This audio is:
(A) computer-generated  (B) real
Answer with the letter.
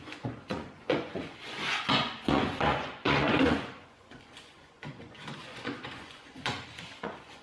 A